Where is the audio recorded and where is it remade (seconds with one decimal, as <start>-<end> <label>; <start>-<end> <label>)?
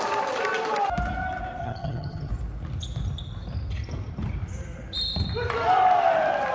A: 0.0-1.6 recorded; 1.6-2.3 remade; 2.3-6.5 recorded